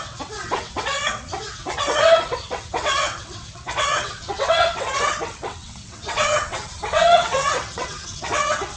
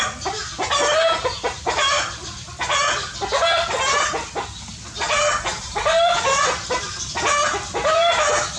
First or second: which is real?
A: second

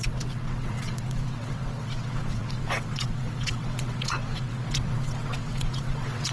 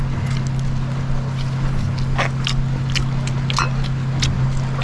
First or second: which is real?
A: second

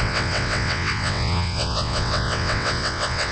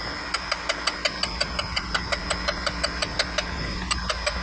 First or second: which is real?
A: second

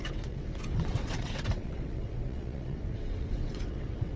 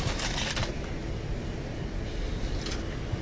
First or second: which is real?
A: second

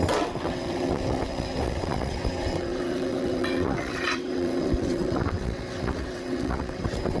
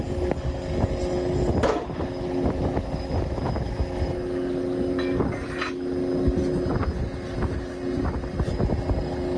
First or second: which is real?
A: second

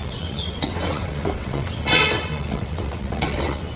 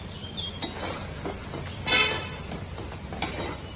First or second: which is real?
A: second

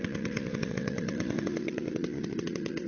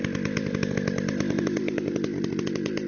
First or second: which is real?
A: second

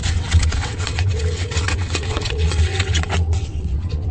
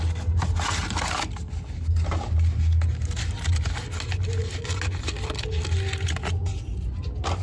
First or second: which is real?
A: second